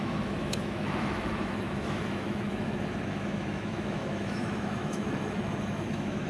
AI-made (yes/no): yes